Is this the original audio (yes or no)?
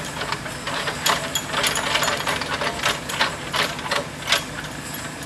yes